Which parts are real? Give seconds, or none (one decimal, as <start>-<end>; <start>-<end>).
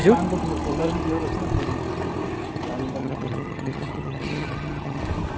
0.0-3.0; 5.0-5.4